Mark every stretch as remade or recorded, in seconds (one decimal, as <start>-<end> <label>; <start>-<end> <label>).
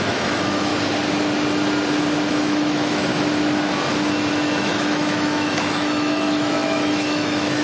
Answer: 0.0-0.7 remade; 0.7-2.3 recorded; 2.3-3.1 remade; 3.1-4.3 recorded; 4.3-7.6 remade